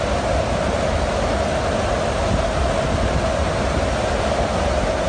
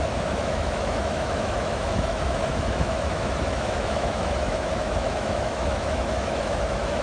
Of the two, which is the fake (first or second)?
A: second